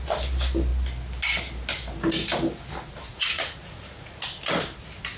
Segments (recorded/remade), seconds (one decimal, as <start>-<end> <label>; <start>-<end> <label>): 0.0-3.1 recorded; 3.1-4.2 remade; 4.2-5.2 recorded